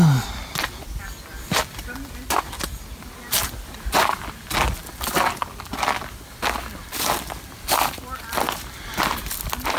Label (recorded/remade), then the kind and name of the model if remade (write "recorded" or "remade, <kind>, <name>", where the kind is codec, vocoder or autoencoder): recorded